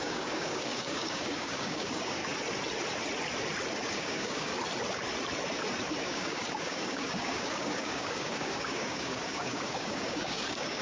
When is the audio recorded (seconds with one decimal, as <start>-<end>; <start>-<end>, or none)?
2.2-3.9; 4.5-6.0